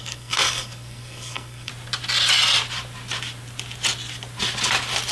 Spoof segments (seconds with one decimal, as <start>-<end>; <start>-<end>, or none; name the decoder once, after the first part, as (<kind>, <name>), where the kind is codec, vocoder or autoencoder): 0.0-1.7 (codec, SNAC)